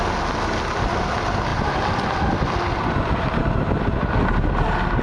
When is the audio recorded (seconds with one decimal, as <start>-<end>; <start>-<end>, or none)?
0.0-5.0